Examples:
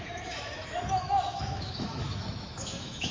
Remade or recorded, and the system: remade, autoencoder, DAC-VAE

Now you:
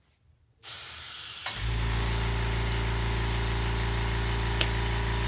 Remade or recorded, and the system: recorded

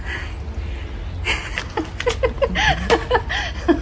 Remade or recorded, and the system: recorded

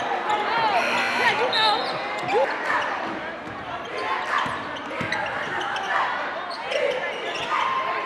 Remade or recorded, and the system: recorded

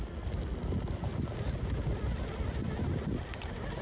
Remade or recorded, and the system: recorded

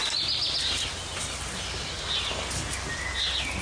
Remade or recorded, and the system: recorded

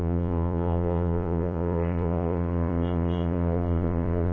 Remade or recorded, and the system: remade, vocoder, Vocos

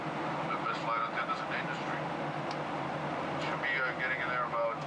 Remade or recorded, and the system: recorded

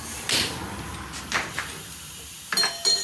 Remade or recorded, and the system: recorded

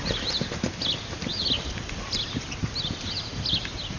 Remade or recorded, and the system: recorded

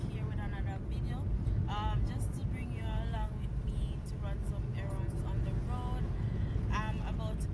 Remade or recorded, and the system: recorded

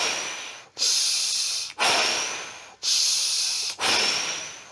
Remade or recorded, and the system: recorded